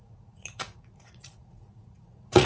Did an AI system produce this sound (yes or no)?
yes